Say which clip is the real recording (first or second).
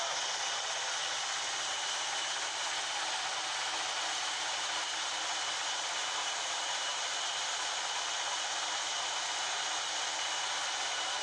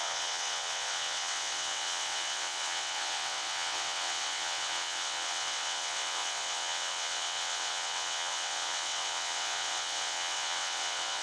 first